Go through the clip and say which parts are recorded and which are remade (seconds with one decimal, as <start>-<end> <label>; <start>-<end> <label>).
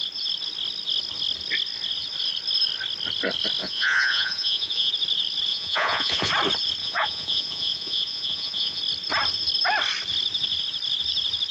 0.0-3.6 recorded; 3.6-4.9 remade; 4.9-5.5 recorded; 5.5-6.3 remade; 6.3-6.8 recorded; 6.8-8.8 remade; 8.8-11.5 recorded